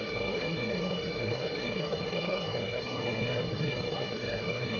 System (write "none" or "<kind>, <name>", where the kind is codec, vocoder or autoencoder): codec, SNAC